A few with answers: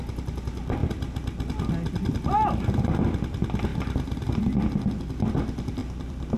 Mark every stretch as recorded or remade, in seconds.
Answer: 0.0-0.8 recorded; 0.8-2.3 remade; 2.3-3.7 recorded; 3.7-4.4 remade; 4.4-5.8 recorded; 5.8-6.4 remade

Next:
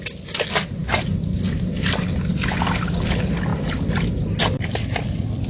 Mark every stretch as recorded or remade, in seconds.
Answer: 0.0-5.5 recorded

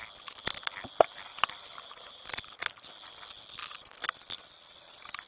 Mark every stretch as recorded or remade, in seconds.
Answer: 0.0-1.3 recorded; 1.3-2.3 remade; 2.3-5.3 recorded

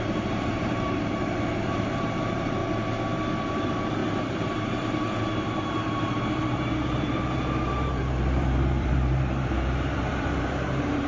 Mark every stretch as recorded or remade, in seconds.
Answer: 0.0-2.6 remade; 2.6-3.5 recorded; 3.5-11.1 remade